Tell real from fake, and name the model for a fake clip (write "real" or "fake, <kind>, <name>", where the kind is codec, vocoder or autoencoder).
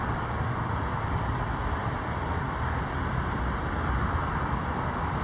fake, vocoder, BigVGAN v2